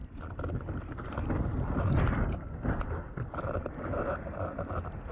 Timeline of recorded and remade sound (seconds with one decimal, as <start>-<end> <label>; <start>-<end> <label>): 0.0-5.1 recorded